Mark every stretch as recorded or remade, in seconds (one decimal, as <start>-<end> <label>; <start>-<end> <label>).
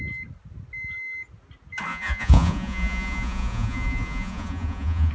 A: 0.0-1.9 recorded; 1.9-5.1 remade